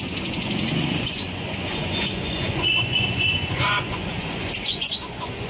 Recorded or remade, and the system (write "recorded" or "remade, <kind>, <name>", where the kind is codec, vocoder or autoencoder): remade, vocoder, Vocos